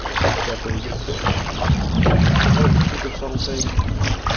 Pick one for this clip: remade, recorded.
recorded